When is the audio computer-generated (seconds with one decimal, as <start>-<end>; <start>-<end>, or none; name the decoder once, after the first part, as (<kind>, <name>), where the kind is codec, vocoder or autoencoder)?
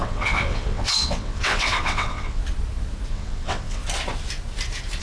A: 0.0-2.4 (vocoder, WaveNeXt); 3.1-3.8